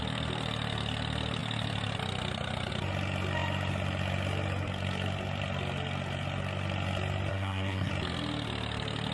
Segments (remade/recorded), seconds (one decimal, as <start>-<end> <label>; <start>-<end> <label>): 0.0-7.3 recorded; 7.3-7.9 remade; 7.9-9.1 recorded

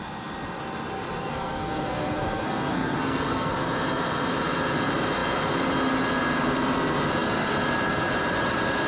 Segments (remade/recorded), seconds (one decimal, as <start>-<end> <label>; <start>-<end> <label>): 0.0-1.2 recorded; 1.2-3.5 remade; 3.5-8.9 recorded

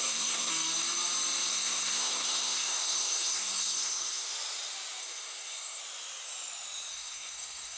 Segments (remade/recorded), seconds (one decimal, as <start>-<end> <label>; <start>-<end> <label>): 0.0-0.5 remade; 0.5-1.5 recorded; 1.5-4.3 remade; 4.3-5.0 recorded; 5.0-5.8 remade; 5.8-6.9 recorded; 6.9-7.8 remade

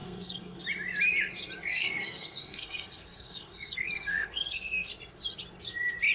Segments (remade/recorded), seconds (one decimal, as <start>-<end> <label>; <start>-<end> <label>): 0.0-0.6 remade; 0.6-1.7 recorded; 1.7-4.9 remade; 4.9-6.1 recorded

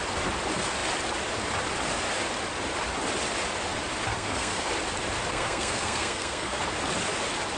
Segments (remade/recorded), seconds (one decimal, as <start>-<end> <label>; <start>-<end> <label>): 0.0-4.1 recorded; 4.1-4.7 remade; 4.7-5.3 recorded; 5.3-6.6 remade; 6.6-7.6 recorded

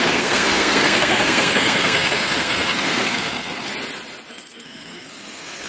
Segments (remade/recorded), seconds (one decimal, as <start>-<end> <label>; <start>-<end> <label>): 0.0-3.7 remade; 3.7-4.3 recorded; 4.3-5.7 remade